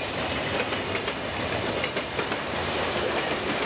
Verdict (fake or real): real